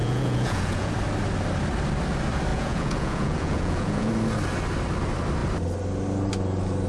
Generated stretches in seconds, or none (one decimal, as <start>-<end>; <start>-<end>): 0.0-0.9; 2.5-4.1